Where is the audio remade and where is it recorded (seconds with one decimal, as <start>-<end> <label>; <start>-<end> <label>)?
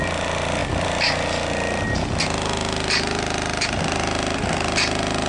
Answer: 0.0-5.3 recorded